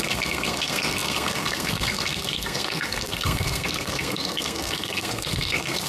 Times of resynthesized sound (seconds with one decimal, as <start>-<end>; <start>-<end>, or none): 0.0-5.9